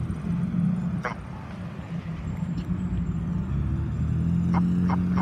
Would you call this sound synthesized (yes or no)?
no